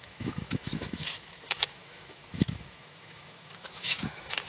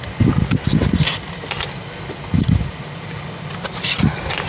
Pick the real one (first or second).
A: second